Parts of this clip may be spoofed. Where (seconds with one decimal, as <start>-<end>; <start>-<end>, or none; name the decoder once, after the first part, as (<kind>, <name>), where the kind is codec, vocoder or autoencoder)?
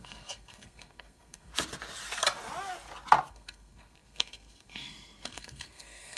0.0-1.5 (codec, SNAC); 3.3-6.2